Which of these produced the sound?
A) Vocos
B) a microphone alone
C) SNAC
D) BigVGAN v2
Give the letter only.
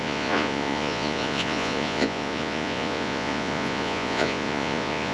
A